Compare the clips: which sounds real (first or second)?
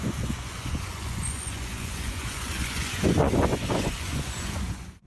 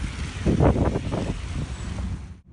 second